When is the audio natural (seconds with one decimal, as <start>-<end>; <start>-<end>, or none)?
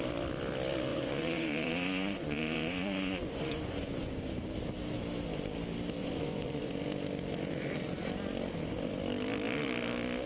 0.0-0.9; 4.3-6.0; 6.7-10.3